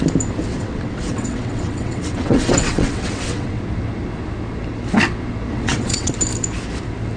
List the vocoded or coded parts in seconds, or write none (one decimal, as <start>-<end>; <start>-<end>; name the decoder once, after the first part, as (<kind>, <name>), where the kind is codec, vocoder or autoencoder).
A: 0.5-3.6 (vocoder, WaveNeXt); 5.5-6.1